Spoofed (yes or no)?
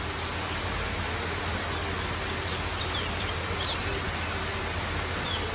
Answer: no